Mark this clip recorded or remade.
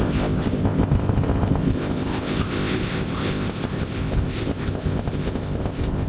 remade